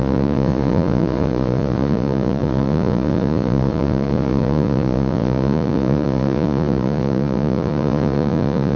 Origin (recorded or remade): remade